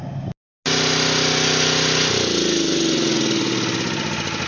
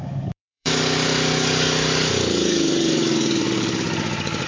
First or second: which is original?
first